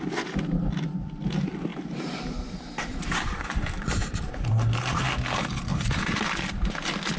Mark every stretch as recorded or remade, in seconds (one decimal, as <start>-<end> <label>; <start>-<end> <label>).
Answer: 0.0-1.7 recorded; 1.7-4.5 remade; 4.5-5.7 recorded; 5.7-6.7 remade; 6.7-7.2 recorded